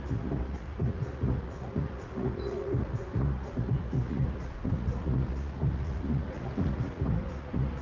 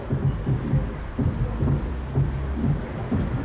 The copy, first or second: first